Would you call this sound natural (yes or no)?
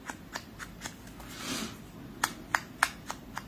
yes